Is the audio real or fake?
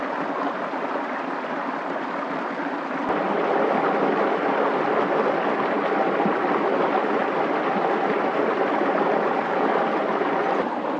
real